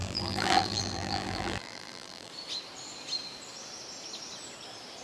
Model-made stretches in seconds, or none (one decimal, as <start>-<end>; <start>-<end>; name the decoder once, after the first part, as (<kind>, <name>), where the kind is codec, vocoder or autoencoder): 0.0-2.3 (vocoder, BigVGAN v2)